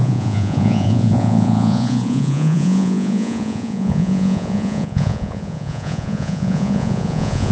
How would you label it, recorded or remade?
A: remade